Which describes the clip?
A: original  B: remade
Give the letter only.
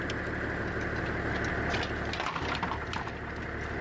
A